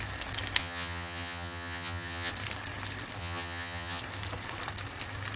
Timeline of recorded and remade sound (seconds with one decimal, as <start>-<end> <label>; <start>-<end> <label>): 0.0-0.6 recorded; 0.6-2.3 remade; 2.3-3.2 recorded; 3.2-4.0 remade; 4.0-5.4 recorded